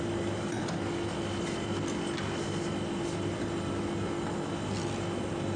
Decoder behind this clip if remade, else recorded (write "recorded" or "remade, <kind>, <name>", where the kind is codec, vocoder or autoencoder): recorded